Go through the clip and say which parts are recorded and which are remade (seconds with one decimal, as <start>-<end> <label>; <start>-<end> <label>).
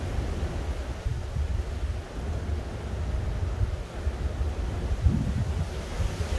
0.0-6.4 recorded